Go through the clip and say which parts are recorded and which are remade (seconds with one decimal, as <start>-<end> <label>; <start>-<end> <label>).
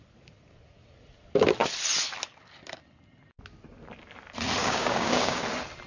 0.0-4.6 recorded; 4.6-5.4 remade; 5.4-5.9 recorded